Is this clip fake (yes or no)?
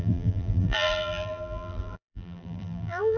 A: yes